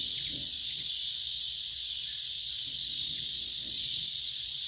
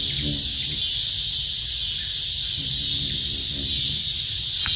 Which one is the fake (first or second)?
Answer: first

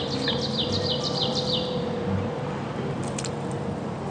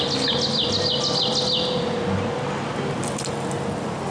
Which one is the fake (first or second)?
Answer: first